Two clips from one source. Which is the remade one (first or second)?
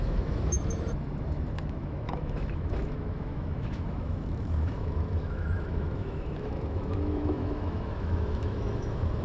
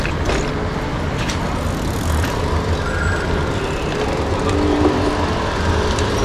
first